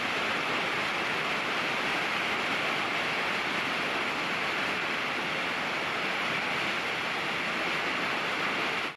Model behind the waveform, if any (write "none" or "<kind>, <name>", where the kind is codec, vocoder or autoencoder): none